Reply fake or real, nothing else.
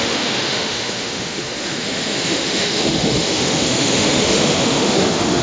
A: fake